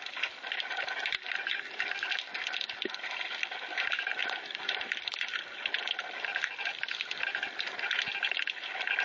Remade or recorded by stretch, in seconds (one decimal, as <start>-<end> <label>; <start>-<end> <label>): 0.0-9.0 recorded